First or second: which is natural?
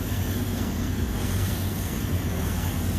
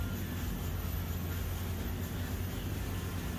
second